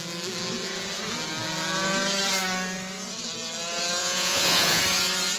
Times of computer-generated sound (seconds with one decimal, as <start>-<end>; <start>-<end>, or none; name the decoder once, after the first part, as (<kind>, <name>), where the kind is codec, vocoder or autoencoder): 4.0-4.8 (vocoder, Vocos)